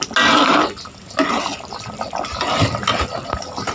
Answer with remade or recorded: recorded